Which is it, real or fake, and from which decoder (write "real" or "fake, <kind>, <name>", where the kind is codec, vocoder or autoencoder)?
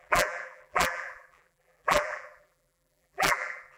fake, vocoder, BigVGAN v2